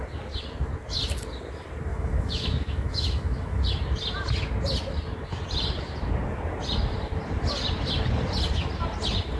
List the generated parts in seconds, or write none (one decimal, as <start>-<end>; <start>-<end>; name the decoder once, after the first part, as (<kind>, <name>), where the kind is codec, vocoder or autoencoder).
1.9-3.6 (autoencoder, DAC-VAE)